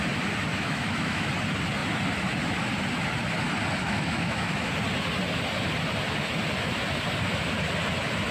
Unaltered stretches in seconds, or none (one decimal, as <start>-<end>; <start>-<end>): 0.0-0.5; 1.3-3.8; 4.7-8.3